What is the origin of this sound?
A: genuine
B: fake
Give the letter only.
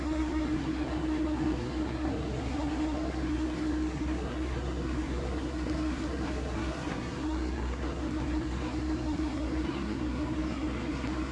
B